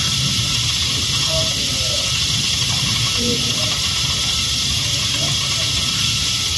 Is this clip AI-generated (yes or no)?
yes